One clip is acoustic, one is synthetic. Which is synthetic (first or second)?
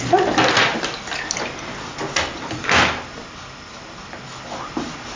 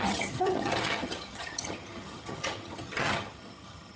second